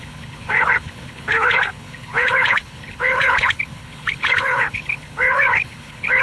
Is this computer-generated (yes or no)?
yes